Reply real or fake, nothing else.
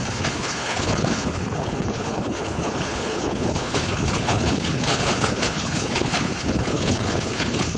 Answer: fake